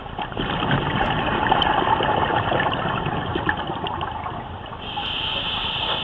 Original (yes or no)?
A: no